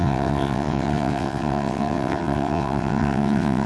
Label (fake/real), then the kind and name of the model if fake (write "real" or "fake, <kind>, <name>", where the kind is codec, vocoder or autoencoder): fake, vocoder, WaveNeXt